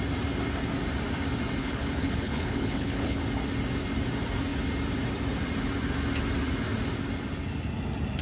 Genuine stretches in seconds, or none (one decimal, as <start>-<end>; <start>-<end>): 0.0-1.6; 3.2-8.2